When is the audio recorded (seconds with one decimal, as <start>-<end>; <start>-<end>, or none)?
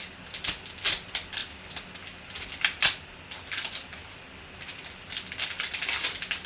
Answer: 0.0-6.5